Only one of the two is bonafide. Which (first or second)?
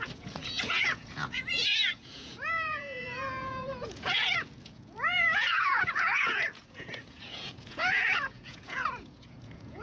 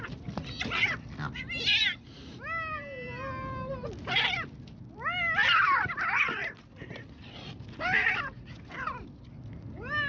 second